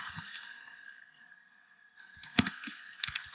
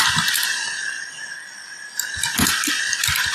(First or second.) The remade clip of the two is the first